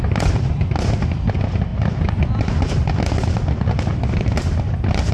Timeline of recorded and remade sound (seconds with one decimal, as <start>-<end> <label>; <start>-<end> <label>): 0.0-5.1 recorded